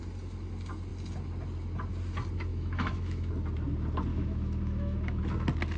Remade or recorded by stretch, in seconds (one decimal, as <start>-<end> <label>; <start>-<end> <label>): 0.0-2.5 recorded; 2.5-3.3 remade; 3.3-4.1 recorded; 4.1-5.2 remade; 5.2-5.8 recorded